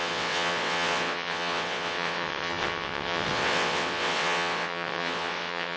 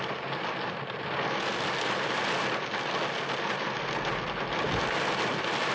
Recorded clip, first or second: second